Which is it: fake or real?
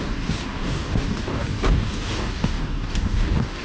fake